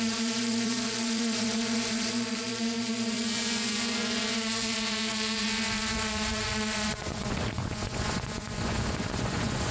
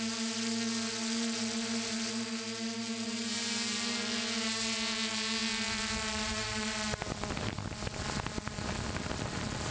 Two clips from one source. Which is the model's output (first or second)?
first